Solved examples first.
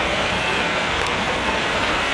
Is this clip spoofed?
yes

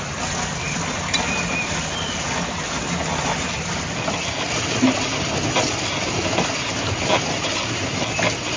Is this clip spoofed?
no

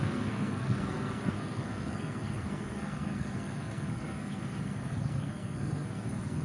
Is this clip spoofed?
yes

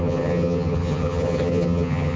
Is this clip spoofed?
yes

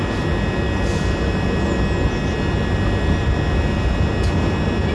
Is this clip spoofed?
no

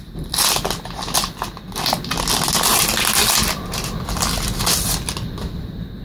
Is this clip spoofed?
no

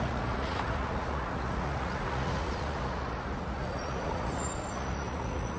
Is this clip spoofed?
yes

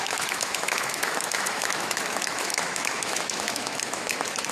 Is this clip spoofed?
yes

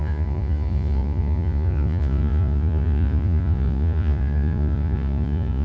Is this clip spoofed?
yes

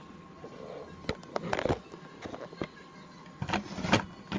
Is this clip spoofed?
no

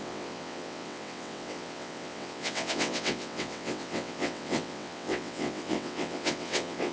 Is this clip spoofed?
yes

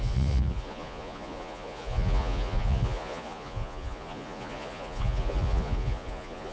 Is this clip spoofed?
yes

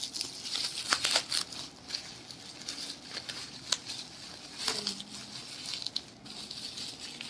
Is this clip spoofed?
no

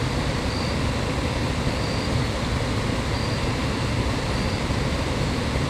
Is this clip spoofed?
no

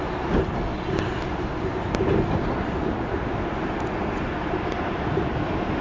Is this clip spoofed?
no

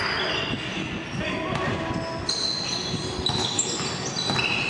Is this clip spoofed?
no